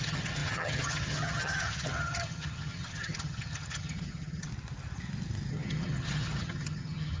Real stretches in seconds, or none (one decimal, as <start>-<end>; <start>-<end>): 4.5-5.5